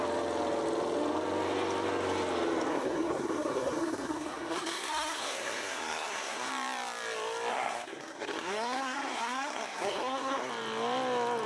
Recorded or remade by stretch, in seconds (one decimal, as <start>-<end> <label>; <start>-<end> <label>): 0.0-2.7 recorded; 2.7-6.5 remade; 6.5-7.5 recorded; 7.5-10.5 remade; 10.5-11.5 recorded